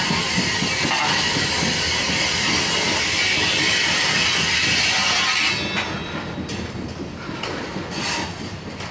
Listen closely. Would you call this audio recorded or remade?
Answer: recorded